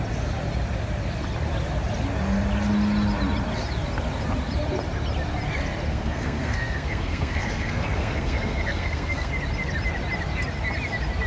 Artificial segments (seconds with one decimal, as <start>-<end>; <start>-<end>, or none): 5.9-9.3